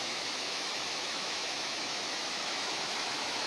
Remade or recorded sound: remade